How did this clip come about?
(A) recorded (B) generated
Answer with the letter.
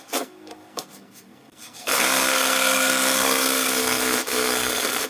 B